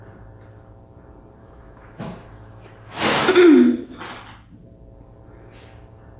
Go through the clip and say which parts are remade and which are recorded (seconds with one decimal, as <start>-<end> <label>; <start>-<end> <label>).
0.0-1.4 recorded; 1.4-3.3 remade; 3.3-6.2 recorded